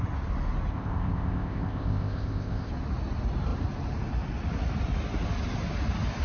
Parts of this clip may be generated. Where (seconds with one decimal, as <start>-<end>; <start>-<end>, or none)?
0.7-2.7

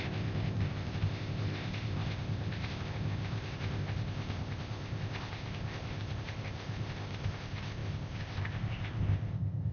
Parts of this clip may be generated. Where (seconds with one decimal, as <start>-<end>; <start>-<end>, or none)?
0.0-9.7

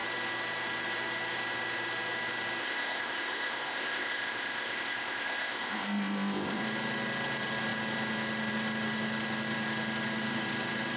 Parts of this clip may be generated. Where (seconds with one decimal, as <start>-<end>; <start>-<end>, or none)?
2.6-6.6

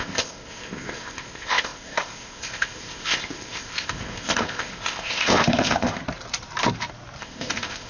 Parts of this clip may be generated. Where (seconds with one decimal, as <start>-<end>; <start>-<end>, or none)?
0.0-6.0; 7.2-7.9